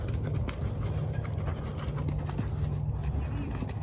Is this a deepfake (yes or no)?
no